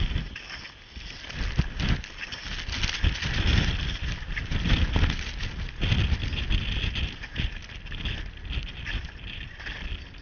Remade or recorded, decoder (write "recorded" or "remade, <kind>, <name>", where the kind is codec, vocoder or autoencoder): recorded